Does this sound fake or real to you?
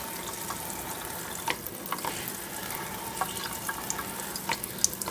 real